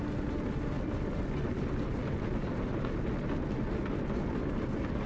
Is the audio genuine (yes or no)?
yes